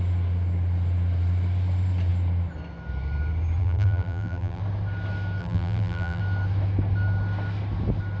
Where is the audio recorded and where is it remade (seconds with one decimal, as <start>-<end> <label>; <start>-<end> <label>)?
0.0-3.6 recorded; 3.6-4.6 remade; 4.6-5.4 recorded; 5.4-6.2 remade; 6.2-8.2 recorded